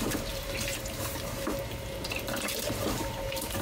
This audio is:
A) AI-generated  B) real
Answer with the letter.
A